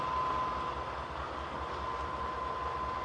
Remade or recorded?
recorded